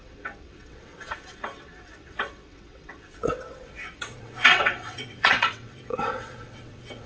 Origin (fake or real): fake